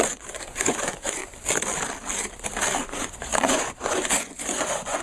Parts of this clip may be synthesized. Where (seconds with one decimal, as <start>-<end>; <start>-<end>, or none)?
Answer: 0.0-1.2; 2.8-5.0